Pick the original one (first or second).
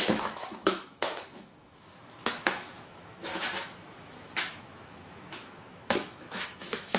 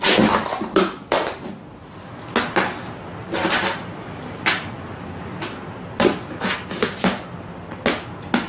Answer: second